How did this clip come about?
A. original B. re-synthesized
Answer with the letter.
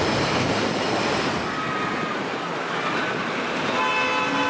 A